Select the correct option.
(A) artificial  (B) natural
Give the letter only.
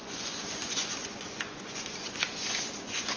A